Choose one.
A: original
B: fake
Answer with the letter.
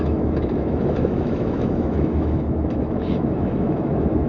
B